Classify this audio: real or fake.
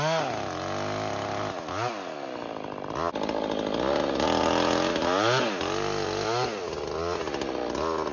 real